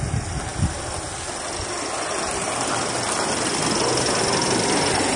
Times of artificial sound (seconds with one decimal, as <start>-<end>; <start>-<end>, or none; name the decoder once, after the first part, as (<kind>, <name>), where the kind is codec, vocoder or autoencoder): none